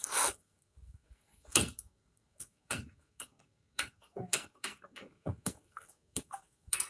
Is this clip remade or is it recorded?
remade